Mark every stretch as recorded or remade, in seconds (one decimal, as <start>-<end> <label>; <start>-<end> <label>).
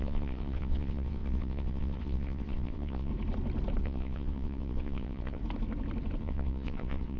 0.0-3.1 remade; 3.1-3.8 recorded; 3.8-5.4 remade; 5.4-6.2 recorded; 6.2-7.2 remade